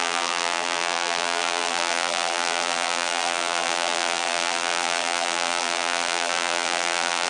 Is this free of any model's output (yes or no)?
no